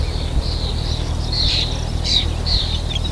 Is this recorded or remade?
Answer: recorded